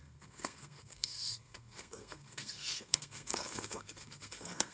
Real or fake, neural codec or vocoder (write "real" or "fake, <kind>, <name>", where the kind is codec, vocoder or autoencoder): fake, codec, SNAC